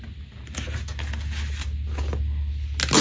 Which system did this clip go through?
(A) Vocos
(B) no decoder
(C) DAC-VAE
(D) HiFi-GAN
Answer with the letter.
B